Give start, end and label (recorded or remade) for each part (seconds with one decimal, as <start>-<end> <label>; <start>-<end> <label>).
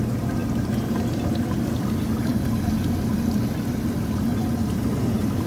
0.0-5.5 recorded